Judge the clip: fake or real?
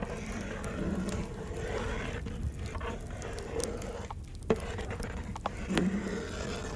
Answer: real